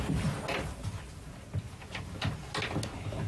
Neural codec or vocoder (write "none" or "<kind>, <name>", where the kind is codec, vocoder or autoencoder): none